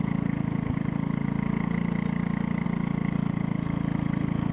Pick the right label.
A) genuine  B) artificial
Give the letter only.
A